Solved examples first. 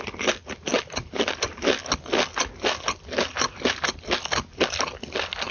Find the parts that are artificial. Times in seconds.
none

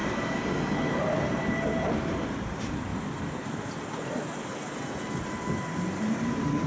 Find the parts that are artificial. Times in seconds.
0.0-2.9 (vocoder, BigVGAN v2); 5.2-6.7

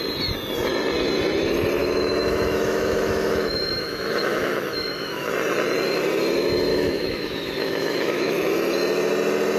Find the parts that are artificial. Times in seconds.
1.8-5.3 (autoencoder, DAC-VAE); 6.7-8.5

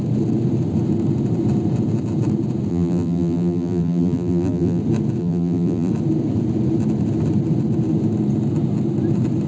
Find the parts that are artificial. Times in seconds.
2.7-4.8 (vocoder, BigVGAN v2); 5.2-5.9